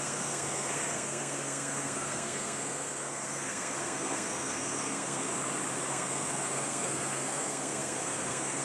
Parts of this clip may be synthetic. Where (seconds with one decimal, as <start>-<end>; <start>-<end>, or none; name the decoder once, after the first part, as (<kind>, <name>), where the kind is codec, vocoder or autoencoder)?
0.0-5.3 (codec, SNAC); 5.9-8.6